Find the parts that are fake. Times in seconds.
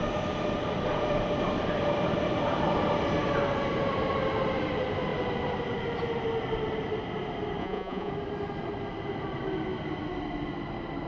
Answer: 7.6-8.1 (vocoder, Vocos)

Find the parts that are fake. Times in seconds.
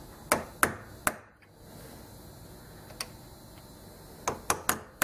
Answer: none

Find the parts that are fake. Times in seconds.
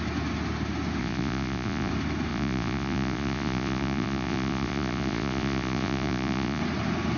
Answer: 1.0-1.9 (vocoder, Vocos); 2.3-6.6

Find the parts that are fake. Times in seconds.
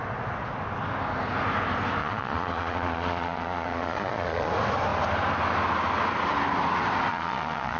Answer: 2.0-4.5 (vocoder, Vocos); 7.1-7.8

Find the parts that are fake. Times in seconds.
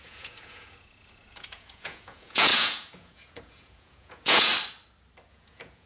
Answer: 0.0-4.5 (vocoder, Vocos); 5.3-5.9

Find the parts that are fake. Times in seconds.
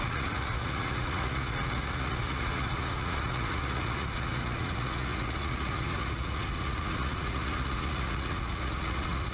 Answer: 0.0-9.3 (vocoder, Vocos)